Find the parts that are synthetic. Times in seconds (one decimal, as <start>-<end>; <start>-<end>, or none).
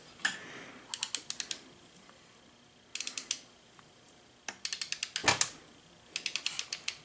none